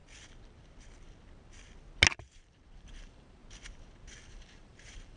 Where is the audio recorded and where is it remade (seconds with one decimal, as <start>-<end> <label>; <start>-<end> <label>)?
0.0-2.1 recorded; 2.1-3.4 remade; 3.4-4.3 recorded; 4.3-5.2 remade